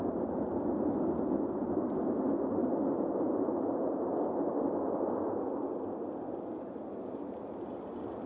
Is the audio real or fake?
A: real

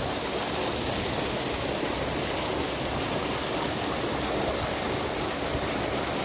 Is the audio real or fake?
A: real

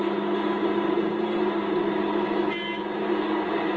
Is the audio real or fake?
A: real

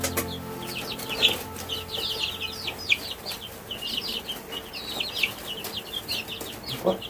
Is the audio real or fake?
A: real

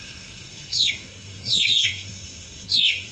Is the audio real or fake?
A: fake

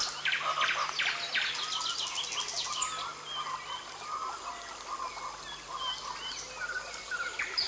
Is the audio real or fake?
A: real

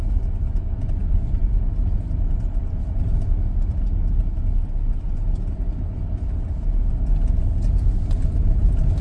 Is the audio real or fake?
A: real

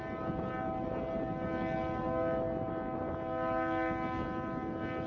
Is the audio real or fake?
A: real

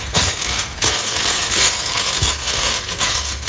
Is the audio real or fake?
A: fake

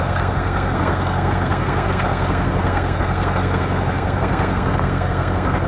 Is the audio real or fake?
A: fake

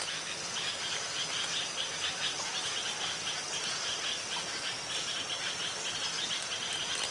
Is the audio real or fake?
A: real